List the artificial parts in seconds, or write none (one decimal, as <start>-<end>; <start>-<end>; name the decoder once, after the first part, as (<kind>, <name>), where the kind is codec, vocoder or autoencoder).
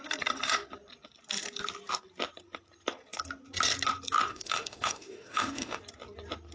4.3-5.8 (autoencoder, DAC-VAE)